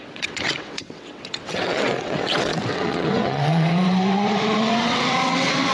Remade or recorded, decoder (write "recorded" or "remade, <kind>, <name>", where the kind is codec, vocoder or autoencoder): remade, vocoder, WaveNeXt